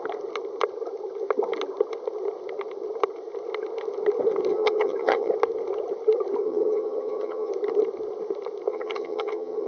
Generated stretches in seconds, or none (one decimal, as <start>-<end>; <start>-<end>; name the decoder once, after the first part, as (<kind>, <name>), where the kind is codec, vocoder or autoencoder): 4.5-5.3 (vocoder, HiFi-GAN); 6.4-7.5; 8.7-9.7